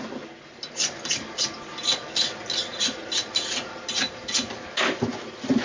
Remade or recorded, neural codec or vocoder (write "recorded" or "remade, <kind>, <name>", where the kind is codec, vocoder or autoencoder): recorded